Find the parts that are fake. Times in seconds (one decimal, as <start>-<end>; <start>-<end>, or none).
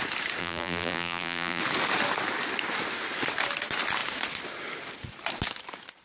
0.4-1.6